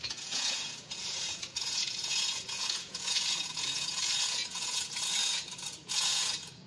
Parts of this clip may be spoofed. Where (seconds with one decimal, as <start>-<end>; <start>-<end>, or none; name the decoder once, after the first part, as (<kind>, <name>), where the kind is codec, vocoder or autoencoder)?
0.0-6.7 (vocoder, Vocos)

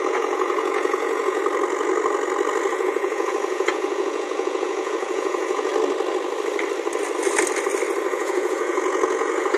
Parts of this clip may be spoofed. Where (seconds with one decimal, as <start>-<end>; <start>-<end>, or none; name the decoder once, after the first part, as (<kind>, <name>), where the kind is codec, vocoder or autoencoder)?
0.0-1.4 (vocoder, Vocos); 2.7-5.7; 8.1-9.6

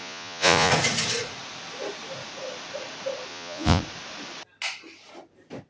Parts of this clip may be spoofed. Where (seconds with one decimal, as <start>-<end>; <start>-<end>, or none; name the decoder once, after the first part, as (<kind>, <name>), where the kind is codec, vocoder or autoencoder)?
0.0-0.7 (vocoder, Vocos); 3.3-3.8